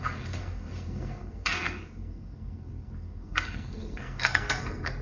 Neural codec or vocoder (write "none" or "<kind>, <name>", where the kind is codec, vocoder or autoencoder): codec, SNAC